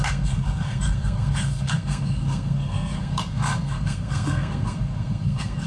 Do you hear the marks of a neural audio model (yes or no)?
yes